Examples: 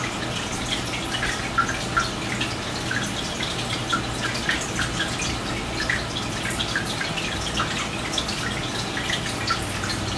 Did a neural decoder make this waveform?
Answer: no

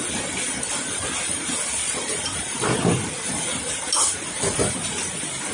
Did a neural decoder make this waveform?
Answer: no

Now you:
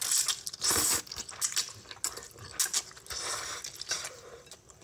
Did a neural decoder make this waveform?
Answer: no